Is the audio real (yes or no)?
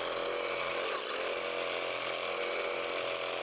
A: yes